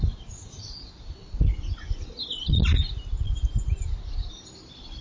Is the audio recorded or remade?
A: recorded